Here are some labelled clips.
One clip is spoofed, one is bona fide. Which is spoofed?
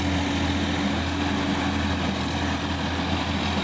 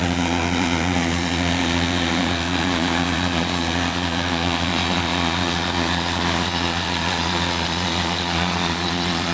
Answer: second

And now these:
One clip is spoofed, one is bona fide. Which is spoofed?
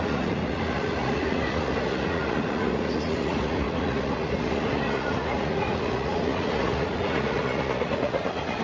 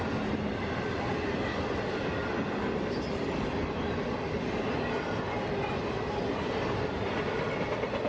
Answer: first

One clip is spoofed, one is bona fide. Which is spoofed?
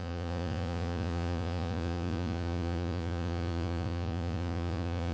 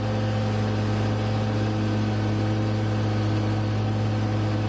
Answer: first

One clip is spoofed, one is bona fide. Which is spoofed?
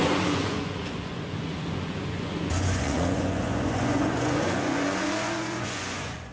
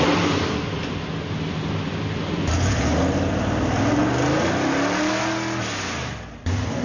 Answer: first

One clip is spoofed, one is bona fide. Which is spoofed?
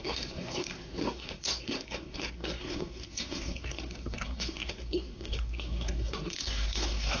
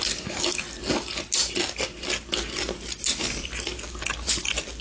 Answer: first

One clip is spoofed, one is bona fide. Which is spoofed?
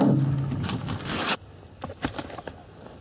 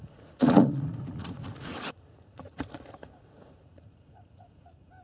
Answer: second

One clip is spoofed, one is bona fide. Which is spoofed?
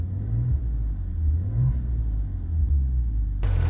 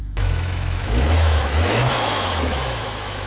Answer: second